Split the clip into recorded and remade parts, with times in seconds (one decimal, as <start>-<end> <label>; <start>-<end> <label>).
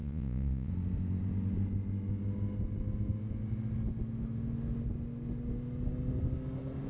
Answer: 0.0-0.7 remade; 0.7-6.9 recorded